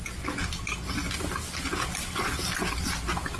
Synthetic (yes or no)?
no